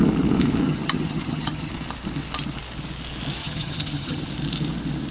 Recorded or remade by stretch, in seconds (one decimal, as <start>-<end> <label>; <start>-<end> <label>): 0.0-0.6 recorded; 0.6-1.7 remade; 1.7-3.4 recorded; 3.4-4.3 remade; 4.3-5.1 recorded